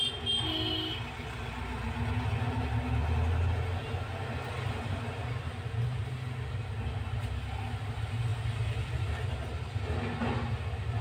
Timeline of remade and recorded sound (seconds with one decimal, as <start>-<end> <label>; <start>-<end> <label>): 0.0-11.0 recorded